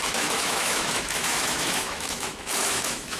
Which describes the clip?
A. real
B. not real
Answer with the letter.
B